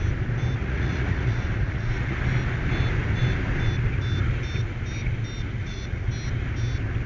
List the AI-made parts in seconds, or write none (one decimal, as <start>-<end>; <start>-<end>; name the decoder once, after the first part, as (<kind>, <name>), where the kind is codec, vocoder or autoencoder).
0.6-2.2 (vocoder, Vocos); 5.6-6.1